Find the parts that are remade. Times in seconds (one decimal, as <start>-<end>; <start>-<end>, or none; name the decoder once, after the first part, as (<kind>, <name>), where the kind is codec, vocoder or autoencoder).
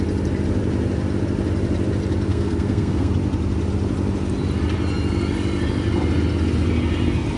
2.3-3.1 (codec, SNAC)